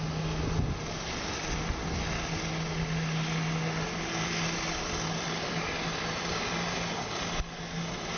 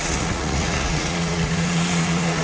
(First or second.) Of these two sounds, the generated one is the second